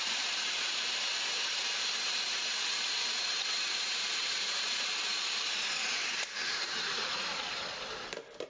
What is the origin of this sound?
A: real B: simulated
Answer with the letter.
B